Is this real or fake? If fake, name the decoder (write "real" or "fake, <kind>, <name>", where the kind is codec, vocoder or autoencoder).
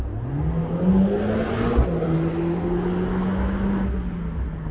real